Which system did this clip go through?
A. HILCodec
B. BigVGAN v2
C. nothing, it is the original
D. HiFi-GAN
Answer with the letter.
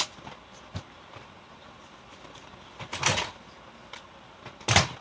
C